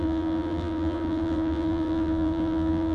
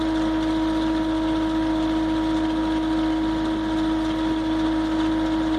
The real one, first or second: second